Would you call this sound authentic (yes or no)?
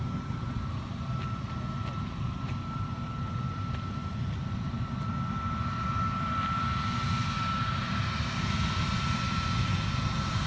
no